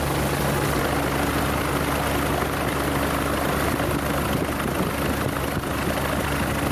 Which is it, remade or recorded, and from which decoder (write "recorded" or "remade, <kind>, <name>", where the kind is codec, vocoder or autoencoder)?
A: recorded